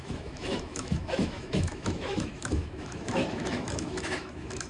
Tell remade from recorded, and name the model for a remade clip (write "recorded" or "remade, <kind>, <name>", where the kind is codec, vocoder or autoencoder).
remade, autoencoder, DAC-VAE